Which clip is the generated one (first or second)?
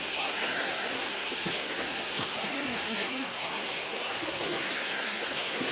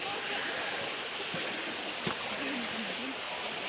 first